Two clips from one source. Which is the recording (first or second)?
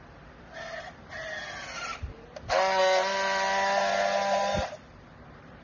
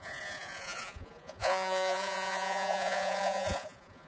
first